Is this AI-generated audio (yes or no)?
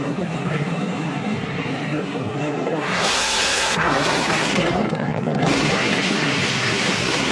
yes